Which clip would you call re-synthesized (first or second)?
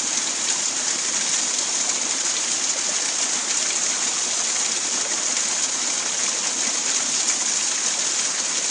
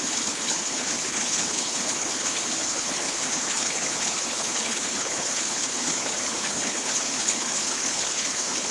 second